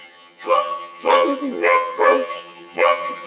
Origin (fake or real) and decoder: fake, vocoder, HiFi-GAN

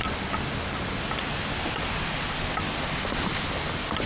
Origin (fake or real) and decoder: real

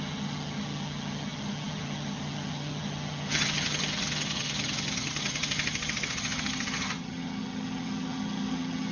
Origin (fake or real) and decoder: fake, vocoder, HiFi-GAN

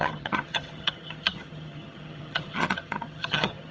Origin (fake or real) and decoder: fake, vocoder, HiFi-GAN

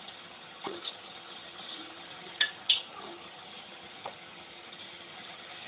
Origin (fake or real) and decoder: fake, vocoder, HiFi-GAN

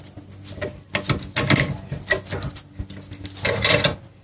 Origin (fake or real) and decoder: real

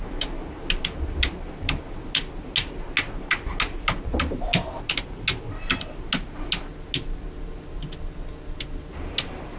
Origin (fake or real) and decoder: real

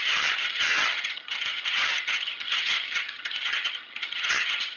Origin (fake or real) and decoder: fake, vocoder, HiFi-GAN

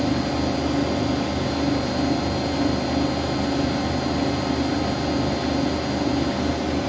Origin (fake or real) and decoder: real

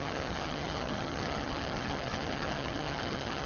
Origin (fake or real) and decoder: fake, vocoder, HiFi-GAN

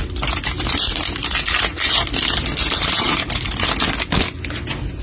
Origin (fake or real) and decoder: real